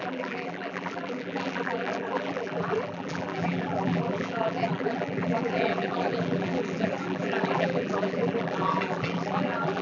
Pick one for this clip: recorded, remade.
remade